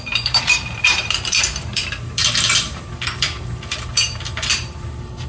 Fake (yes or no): yes